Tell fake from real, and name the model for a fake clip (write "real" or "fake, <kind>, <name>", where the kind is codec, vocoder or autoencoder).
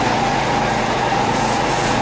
fake, vocoder, Vocos